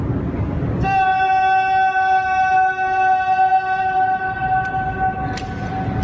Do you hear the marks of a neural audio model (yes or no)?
no